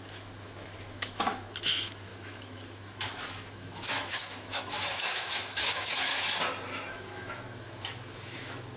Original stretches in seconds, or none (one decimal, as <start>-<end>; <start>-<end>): 6.1-6.9

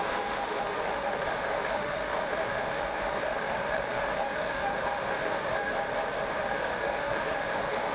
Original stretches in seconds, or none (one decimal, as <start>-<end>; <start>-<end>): 5.7-6.3

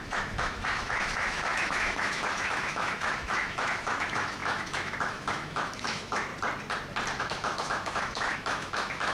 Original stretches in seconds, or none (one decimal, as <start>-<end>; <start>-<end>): 6.3-7.2

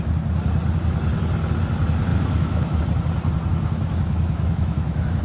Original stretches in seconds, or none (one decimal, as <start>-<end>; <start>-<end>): 0.0-2.1; 2.8-3.5

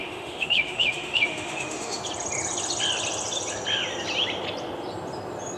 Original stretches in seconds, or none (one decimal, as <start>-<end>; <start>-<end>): 2.0-5.6